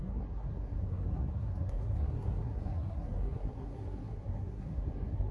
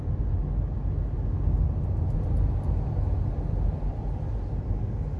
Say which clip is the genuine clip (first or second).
second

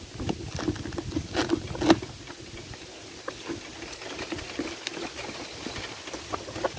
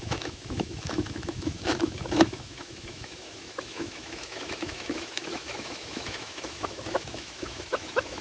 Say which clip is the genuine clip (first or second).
first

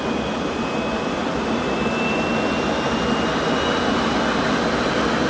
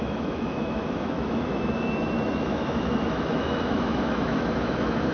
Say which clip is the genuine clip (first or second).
first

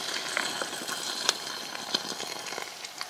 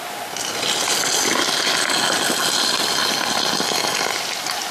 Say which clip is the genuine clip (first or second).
second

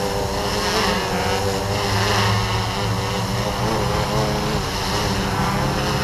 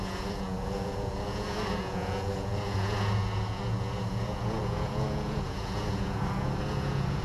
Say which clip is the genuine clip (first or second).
first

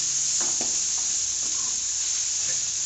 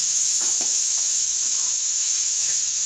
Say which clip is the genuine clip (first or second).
first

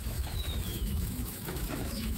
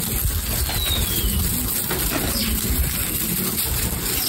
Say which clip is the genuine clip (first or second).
second